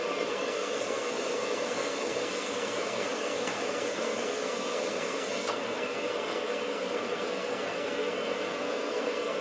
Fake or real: fake